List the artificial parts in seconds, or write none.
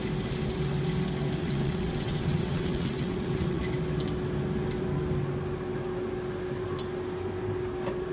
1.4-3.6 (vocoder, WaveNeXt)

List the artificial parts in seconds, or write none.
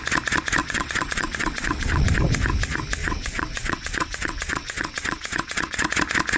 0.6-2.1 (vocoder, WaveNeXt); 3.0-5.9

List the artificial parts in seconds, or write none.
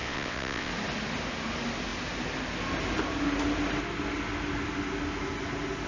0.0-0.7 (vocoder, WaveNeXt)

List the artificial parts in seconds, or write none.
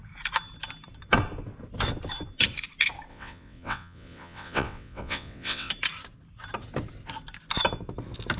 3.1-5.7 (vocoder, WaveNeXt)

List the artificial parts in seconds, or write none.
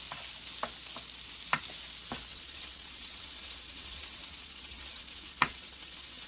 2.3-6.3 (vocoder, WaveNeXt)